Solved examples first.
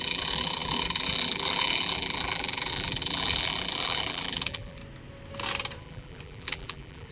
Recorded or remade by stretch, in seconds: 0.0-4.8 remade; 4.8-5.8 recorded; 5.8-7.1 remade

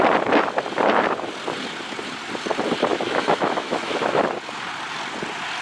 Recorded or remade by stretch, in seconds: 0.0-2.9 recorded; 2.9-4.2 remade; 4.2-5.6 recorded

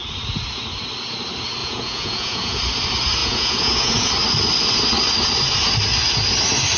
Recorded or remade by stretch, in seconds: 0.0-1.6 recorded; 1.6-2.6 remade; 2.6-3.2 recorded; 3.2-4.1 remade; 4.1-6.8 recorded

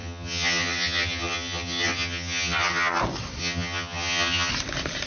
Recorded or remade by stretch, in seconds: 0.0-3.0 remade; 3.0-3.4 recorded; 3.4-4.5 remade; 4.5-5.1 recorded

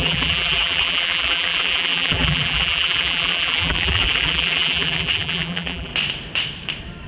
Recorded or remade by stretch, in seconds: 0.0-5.9 remade; 5.9-7.1 recorded